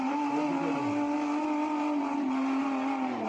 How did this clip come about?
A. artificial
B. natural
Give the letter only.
B